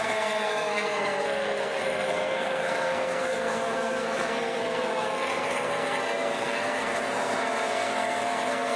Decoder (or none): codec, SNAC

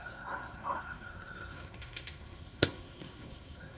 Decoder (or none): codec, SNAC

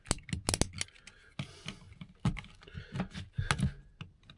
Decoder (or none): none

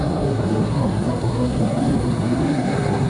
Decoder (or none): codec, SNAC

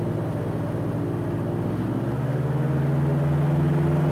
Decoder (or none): none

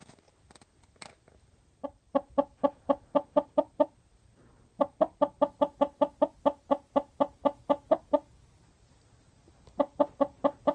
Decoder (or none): none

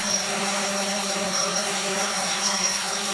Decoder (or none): codec, SNAC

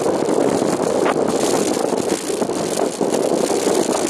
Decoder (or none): none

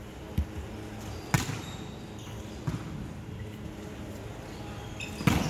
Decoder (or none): none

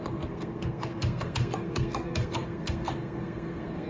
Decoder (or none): codec, SNAC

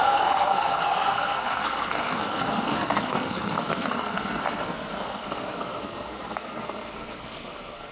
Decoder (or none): codec, SNAC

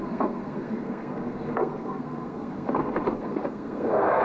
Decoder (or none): codec, SNAC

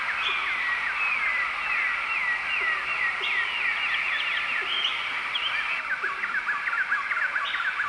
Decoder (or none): none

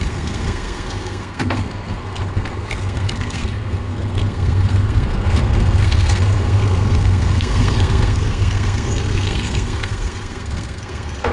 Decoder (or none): codec, SNAC